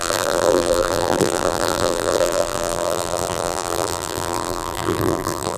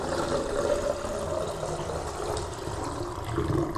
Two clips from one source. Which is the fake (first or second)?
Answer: first